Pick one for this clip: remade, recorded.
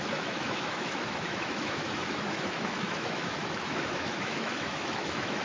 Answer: remade